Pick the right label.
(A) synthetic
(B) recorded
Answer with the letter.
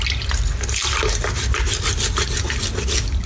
B